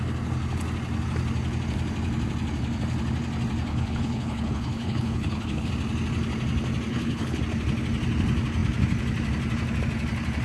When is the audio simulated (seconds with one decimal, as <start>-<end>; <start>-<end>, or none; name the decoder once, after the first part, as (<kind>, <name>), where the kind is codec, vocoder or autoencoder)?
3.7-5.7 (codec, HILCodec); 6.9-7.4